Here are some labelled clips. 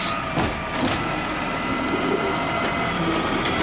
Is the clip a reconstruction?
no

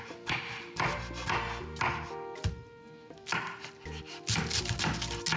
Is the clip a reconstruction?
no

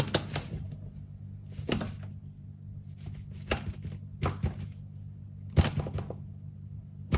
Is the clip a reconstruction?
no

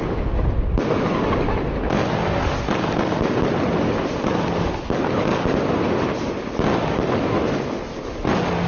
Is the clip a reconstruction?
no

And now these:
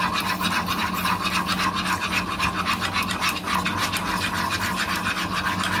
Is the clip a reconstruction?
no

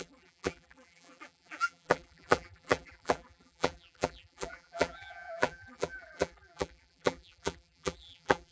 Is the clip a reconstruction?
yes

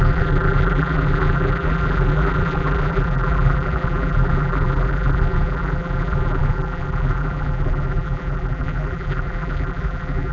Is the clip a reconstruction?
yes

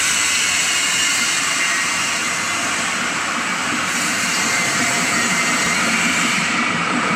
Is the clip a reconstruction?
yes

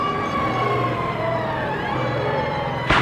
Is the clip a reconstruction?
yes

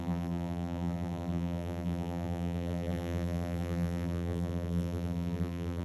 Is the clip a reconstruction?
yes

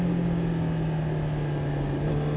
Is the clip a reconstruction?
no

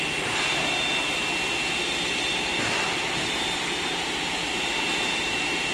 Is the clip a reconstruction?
no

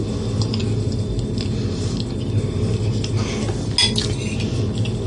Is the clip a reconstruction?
no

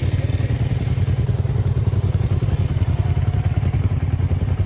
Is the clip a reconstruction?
no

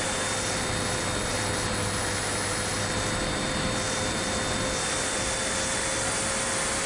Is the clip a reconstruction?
no